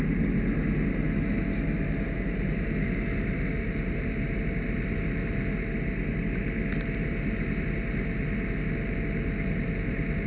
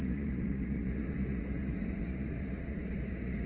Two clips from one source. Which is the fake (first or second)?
second